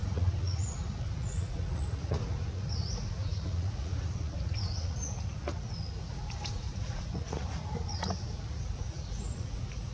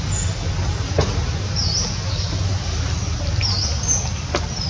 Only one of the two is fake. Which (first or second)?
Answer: first